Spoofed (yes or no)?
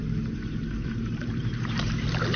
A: yes